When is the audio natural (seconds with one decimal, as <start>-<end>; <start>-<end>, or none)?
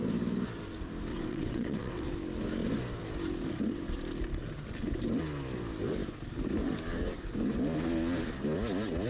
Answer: 0.0-1.1; 2.1-9.1